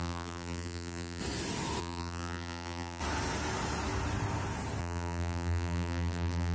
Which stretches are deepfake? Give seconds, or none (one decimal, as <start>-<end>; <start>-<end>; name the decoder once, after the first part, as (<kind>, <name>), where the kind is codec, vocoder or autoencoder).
0.0-1.2 (vocoder, BigVGAN v2); 1.8-3.0; 4.8-6.5